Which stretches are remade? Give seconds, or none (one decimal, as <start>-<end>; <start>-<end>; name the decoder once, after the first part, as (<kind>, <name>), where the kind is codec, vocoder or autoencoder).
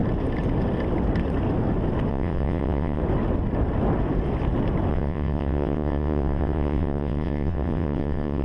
2.1-3.0 (vocoder, WaveNeXt); 4.9-8.4